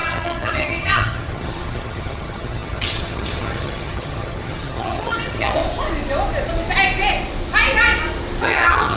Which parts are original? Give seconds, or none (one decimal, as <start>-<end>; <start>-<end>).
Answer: 5.6-8.4